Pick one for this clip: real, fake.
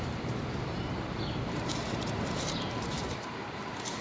fake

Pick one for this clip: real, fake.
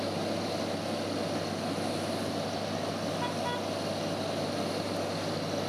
real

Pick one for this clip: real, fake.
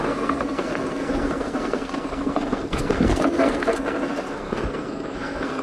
fake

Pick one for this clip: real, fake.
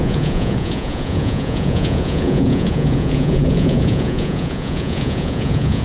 fake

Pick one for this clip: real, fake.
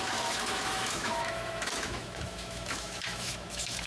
fake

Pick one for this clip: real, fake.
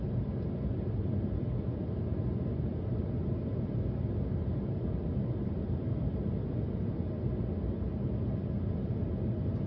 real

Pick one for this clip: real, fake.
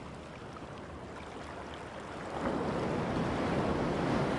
real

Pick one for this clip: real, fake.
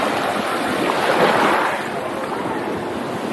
real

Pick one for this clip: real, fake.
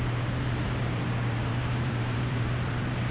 fake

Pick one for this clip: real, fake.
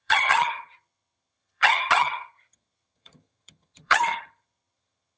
fake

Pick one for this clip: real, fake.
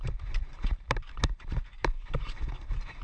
fake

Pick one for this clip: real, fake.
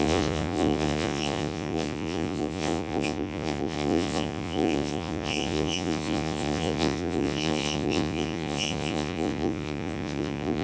fake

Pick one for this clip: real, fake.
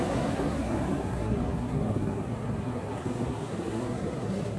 fake